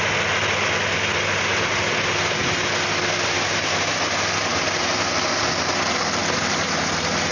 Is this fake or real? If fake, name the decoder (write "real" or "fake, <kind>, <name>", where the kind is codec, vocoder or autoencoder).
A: real